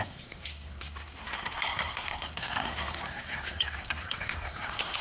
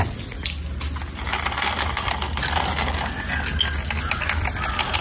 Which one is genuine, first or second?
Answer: second